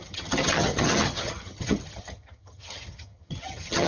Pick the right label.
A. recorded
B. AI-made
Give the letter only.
B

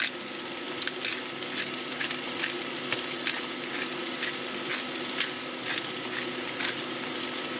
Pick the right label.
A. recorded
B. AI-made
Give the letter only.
A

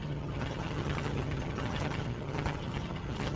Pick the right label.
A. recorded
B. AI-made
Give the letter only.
B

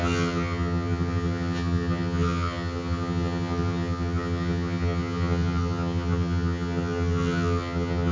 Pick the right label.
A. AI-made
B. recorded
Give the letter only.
A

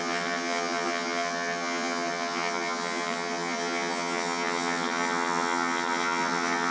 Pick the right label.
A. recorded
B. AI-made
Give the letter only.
B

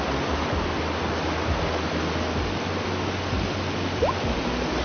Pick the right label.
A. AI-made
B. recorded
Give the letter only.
B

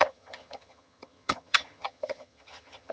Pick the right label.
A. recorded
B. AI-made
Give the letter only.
B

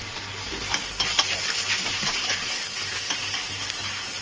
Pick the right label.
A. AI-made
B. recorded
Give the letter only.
B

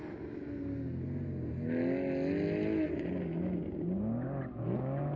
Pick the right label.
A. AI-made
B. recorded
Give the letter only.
B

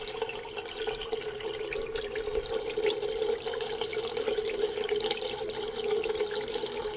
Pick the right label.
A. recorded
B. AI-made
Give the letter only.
A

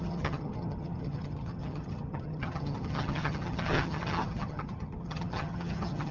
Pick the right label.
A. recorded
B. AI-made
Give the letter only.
B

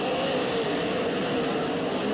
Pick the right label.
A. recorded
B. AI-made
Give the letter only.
A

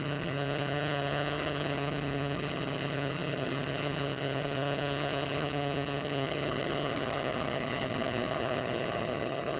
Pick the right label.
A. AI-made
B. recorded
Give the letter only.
A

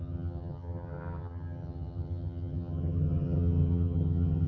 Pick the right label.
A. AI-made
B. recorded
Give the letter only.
A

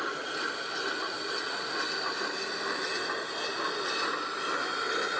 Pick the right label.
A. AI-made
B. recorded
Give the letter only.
B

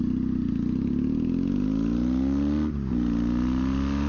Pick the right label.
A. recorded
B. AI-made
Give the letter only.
A